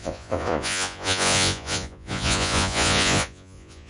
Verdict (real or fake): fake